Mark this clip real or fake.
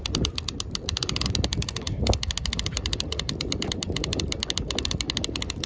real